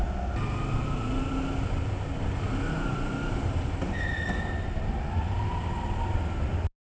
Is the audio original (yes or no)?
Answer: yes